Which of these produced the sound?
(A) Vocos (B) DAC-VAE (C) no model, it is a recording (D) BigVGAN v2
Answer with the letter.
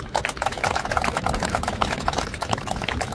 B